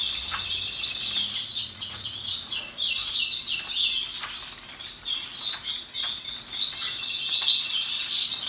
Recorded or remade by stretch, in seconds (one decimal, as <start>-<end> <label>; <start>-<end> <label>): 0.0-1.5 recorded; 1.5-3.1 remade; 3.1-8.5 recorded